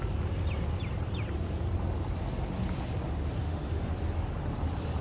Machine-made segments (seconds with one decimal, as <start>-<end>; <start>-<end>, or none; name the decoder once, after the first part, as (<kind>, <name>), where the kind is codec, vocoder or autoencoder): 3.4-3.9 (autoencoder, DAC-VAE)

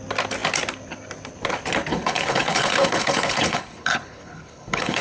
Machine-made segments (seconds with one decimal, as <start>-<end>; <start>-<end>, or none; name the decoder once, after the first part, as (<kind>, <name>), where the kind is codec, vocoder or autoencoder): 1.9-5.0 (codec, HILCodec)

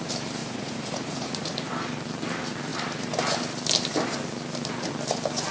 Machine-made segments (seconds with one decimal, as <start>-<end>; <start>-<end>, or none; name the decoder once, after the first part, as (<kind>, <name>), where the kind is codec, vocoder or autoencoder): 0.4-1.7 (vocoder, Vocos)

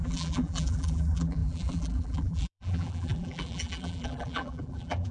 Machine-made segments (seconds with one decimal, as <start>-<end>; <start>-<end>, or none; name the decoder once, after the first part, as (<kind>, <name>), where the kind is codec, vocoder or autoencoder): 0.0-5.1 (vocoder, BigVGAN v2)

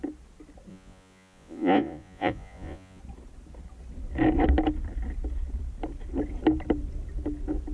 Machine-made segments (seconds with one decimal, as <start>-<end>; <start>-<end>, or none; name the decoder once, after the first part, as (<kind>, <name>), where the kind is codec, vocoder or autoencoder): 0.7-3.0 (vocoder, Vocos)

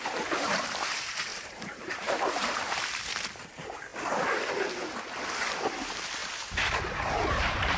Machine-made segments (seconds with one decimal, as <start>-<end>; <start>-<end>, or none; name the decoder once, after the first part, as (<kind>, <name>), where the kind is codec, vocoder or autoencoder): 1.3-2.6 (vocoder, BigVGAN v2); 6.2-7.8

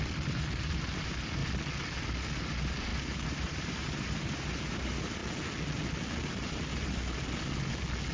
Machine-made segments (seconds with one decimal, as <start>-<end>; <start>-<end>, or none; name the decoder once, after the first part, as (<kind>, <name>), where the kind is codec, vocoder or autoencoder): 0.0-1.4 (vocoder, BigVGAN v2); 2.0-5.2; 6.2-6.7

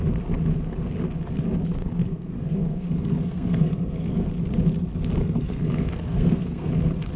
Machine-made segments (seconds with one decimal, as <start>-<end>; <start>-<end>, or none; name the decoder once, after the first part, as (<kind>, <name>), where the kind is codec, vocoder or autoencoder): 1.8-4.3 (codec, SNAC); 5.2-6.7